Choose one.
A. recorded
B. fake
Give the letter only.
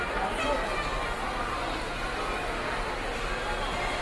A